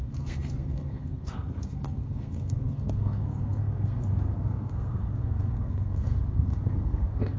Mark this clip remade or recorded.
remade